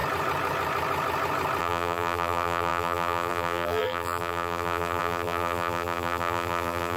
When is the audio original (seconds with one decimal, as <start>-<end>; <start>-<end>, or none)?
0.0-1.6